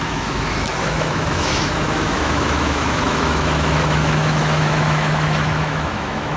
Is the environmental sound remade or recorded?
remade